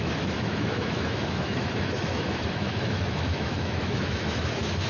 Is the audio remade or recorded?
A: remade